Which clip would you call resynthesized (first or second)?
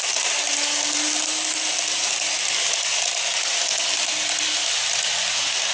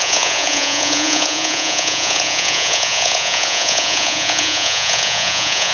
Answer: second